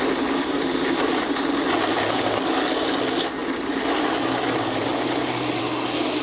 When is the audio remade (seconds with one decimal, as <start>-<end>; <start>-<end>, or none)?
none